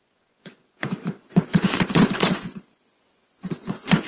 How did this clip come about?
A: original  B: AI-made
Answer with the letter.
B